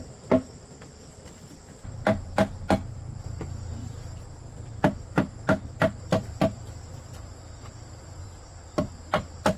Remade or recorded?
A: remade